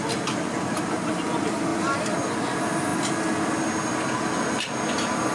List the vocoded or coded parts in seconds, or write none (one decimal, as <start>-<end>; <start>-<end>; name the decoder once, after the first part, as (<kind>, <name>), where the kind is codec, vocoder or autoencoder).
1.7-2.3 (vocoder, BigVGAN v2)